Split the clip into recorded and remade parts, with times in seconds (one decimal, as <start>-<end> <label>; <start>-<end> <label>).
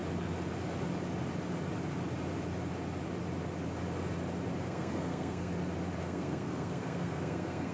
0.0-4.6 recorded; 4.6-5.5 remade; 5.5-6.0 recorded; 6.0-7.7 remade